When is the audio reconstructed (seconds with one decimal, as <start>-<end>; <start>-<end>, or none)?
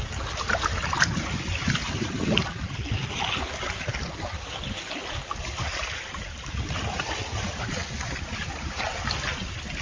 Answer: 5.7-7.5